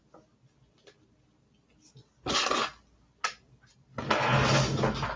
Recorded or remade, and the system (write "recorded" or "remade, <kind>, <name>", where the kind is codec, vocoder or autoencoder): recorded